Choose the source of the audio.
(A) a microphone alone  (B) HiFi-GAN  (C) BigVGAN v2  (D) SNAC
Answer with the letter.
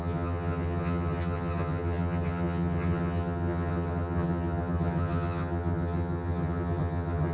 B